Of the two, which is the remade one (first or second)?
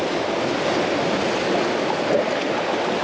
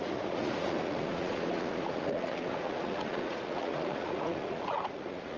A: second